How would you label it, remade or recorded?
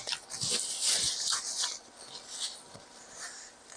recorded